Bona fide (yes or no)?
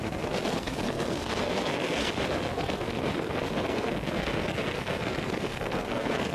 no